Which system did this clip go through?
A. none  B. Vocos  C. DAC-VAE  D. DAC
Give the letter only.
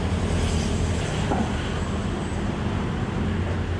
A